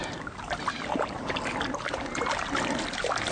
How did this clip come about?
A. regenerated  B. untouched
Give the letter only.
B